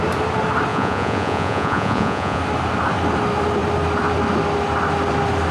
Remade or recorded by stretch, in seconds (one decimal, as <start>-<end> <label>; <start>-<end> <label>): 0.0-0.7 recorded; 0.7-2.4 remade; 2.4-5.5 recorded